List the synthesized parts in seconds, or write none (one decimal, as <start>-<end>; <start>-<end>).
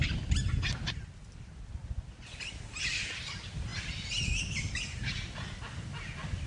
none